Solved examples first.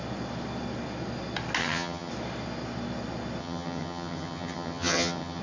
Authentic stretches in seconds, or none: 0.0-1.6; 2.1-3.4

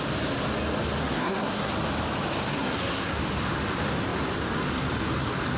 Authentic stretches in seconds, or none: 0.0-1.0; 1.7-2.5; 3.2-5.6